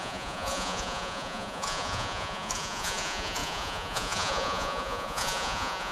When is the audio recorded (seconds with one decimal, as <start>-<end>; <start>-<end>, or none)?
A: none

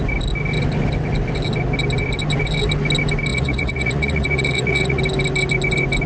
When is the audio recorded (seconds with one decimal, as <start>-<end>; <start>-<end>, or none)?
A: 0.0-3.3; 5.0-6.1

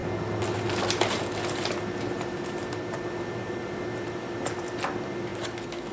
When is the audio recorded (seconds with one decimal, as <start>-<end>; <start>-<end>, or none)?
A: 0.0-5.9

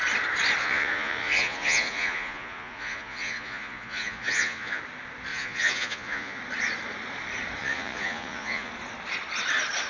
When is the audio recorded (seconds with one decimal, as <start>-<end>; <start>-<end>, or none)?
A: 0.0-0.6; 4.8-5.3; 6.4-7.6; 8.7-9.9

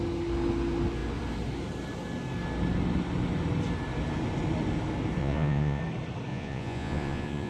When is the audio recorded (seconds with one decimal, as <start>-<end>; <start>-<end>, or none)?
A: 0.0-5.2; 5.8-6.3